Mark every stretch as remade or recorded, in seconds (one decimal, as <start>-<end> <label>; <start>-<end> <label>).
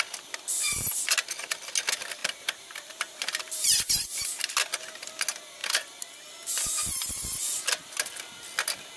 0.0-2.2 recorded; 2.2-4.4 remade; 4.4-9.0 recorded